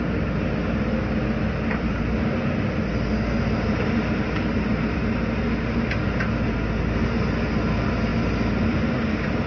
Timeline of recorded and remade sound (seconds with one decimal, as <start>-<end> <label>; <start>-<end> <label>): 0.0-9.5 recorded